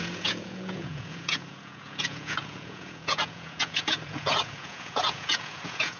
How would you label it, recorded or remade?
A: remade